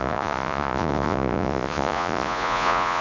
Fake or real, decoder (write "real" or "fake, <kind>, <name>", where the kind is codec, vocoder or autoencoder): fake, vocoder, Vocos